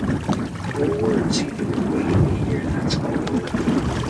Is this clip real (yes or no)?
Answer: yes